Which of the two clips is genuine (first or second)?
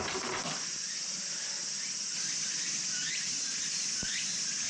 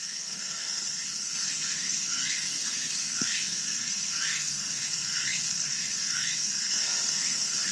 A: first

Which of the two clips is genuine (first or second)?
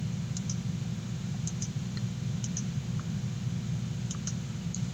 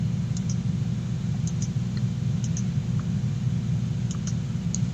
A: second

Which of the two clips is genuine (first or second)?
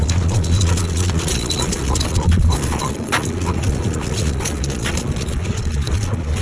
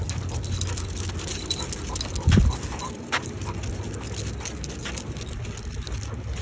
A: second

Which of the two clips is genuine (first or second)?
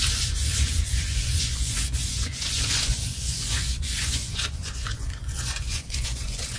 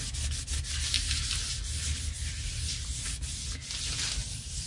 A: second